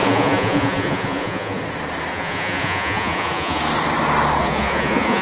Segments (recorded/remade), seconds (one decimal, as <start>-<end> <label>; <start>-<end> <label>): 0.0-1.6 remade; 1.6-2.1 recorded; 2.1-3.6 remade; 3.6-4.4 recorded; 4.4-5.2 remade